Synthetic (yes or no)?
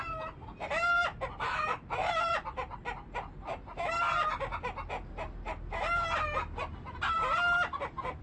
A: no